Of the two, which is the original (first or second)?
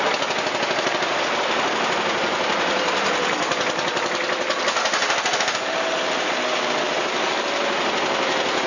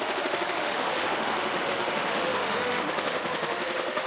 first